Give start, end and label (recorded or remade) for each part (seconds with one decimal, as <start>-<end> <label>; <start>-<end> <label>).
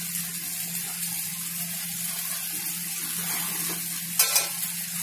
0.0-5.0 recorded